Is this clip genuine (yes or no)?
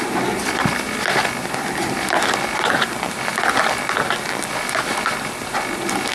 yes